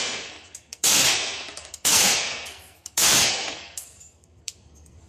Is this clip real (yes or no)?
no